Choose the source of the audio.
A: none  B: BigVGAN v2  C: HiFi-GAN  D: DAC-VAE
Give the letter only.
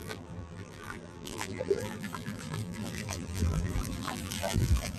B